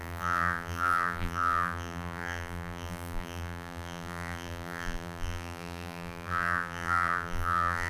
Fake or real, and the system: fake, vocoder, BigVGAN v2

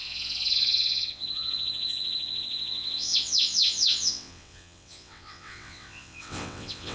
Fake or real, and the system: fake, vocoder, WaveNeXt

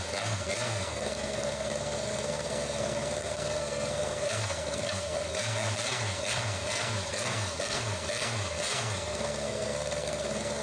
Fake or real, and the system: fake, codec, SNAC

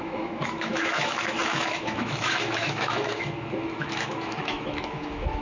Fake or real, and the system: fake, autoencoder, DAC-VAE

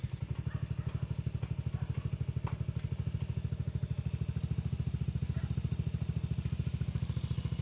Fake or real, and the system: real